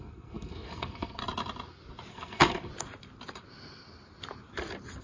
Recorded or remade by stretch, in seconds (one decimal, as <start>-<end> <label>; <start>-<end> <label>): 0.0-1.2 remade; 1.2-2.1 recorded; 2.1-2.7 remade; 2.7-5.0 recorded